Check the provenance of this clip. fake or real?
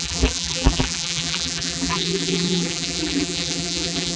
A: fake